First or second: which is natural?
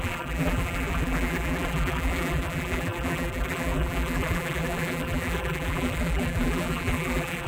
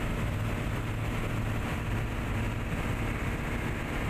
second